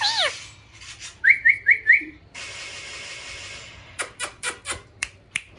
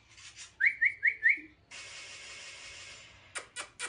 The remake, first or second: first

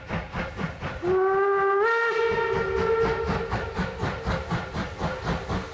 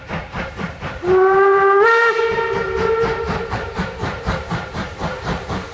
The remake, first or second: second